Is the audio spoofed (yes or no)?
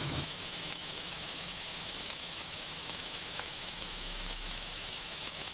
yes